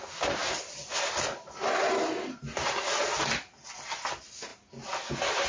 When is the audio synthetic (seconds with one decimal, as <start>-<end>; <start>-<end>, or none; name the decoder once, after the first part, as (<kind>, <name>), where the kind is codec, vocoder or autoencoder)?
none